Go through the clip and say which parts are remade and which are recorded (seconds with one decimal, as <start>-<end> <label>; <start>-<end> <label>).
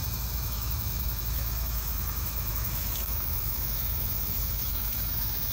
0.0-5.5 remade